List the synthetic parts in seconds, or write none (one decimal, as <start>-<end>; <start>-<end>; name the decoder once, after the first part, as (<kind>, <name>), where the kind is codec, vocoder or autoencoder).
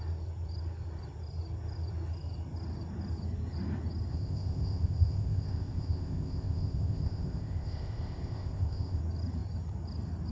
4.1-9.0 (codec, ZipCodec)